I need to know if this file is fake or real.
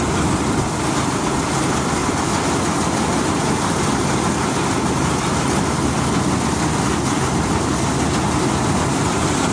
real